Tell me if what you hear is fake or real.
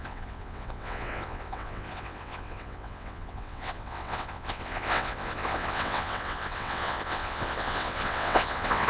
fake